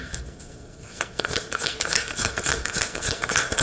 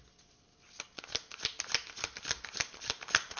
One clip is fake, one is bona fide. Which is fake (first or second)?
first